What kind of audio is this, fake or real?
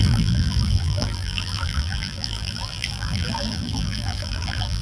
fake